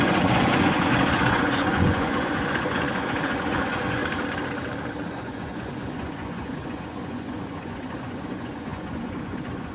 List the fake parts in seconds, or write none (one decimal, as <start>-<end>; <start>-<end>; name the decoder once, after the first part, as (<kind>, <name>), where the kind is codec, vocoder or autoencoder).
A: 0.0-4.0 (vocoder, Vocos); 5.1-9.7